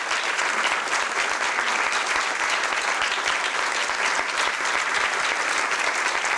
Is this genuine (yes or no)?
yes